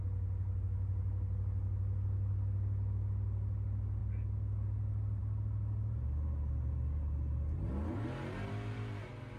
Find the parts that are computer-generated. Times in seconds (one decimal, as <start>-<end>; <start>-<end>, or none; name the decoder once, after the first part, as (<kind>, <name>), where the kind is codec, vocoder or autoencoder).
none